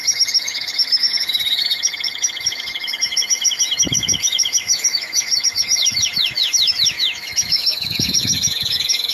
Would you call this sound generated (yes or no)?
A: yes